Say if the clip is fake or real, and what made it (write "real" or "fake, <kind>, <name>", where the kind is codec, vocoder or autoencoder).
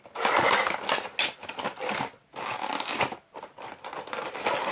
real